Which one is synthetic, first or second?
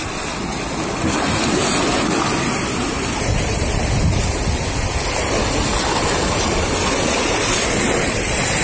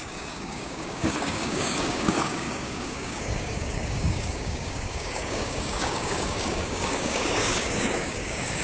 second